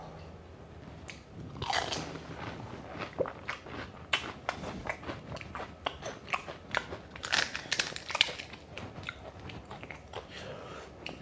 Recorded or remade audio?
recorded